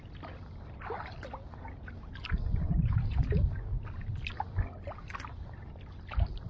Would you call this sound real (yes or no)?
yes